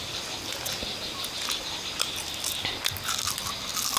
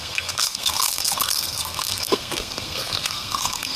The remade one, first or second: second